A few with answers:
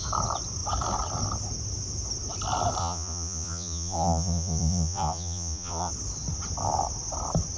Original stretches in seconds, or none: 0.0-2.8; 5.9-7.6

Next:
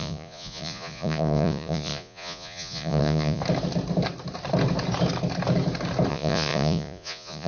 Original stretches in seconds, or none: 3.4-6.1